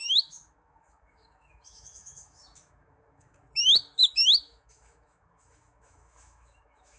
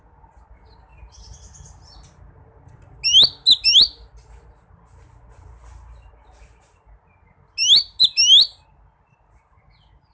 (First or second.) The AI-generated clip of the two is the first